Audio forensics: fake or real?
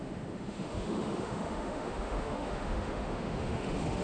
fake